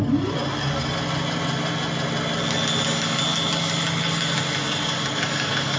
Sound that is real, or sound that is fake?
real